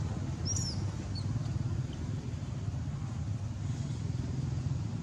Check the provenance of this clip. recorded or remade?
recorded